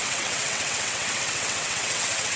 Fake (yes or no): yes